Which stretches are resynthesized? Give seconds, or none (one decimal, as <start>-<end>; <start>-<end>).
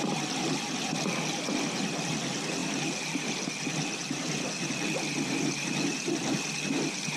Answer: 2.6-3.3